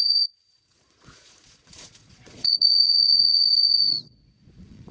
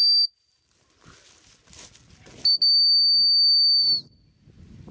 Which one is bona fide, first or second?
second